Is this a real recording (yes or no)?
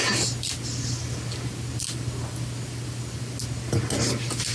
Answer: yes